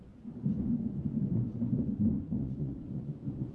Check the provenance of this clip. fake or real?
fake